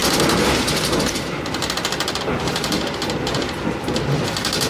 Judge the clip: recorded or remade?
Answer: recorded